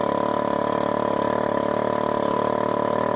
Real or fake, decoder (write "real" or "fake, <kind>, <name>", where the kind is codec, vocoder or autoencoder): real